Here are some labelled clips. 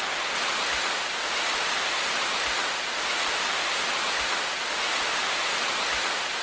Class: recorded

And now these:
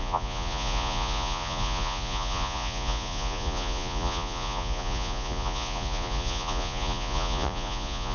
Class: remade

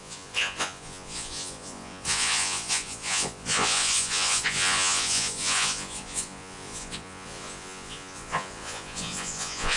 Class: remade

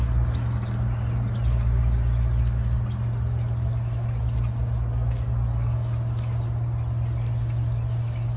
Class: recorded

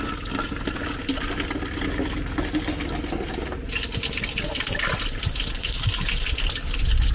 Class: recorded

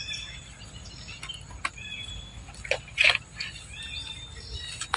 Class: recorded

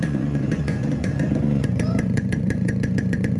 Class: remade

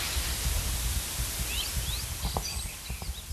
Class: recorded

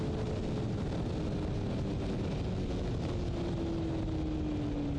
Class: recorded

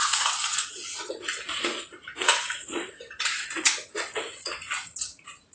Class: remade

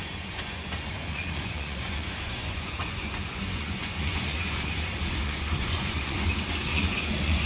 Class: remade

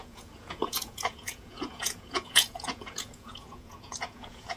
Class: remade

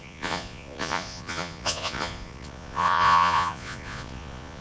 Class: remade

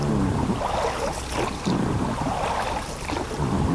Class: recorded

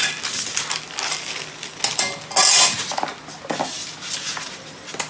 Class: recorded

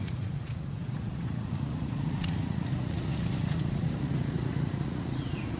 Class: remade